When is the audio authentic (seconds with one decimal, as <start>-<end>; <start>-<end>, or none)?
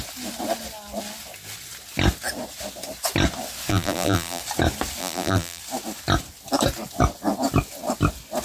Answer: 0.0-3.7; 4.4-5.0; 5.6-8.4